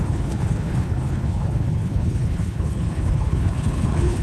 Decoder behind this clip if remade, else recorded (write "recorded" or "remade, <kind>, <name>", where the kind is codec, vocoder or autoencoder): remade, codec, HILCodec